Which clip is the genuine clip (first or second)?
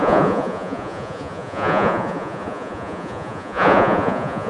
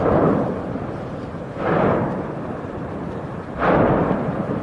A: second